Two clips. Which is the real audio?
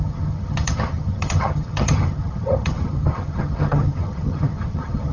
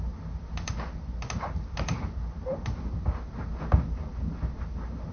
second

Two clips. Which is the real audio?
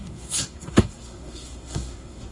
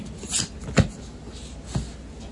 second